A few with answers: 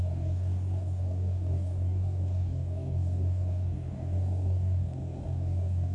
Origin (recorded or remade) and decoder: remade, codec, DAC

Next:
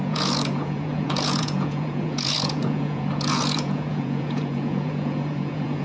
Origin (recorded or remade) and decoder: remade, vocoder, Vocos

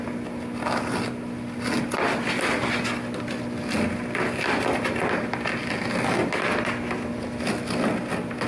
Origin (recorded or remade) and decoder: recorded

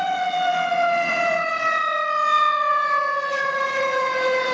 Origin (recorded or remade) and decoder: remade, vocoder, WaveNeXt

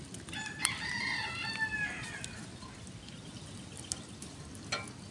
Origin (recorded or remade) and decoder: recorded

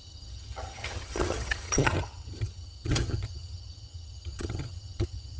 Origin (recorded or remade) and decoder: remade, vocoder, HiFi-GAN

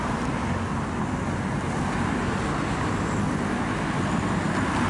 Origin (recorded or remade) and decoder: recorded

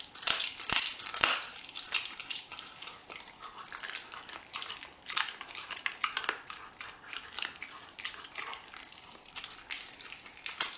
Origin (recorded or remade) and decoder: recorded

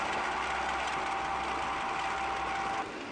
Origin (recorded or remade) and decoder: recorded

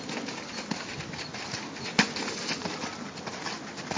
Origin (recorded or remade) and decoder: recorded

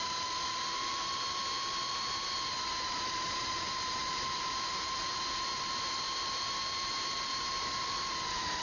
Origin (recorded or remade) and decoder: remade, vocoder, BigVGAN v2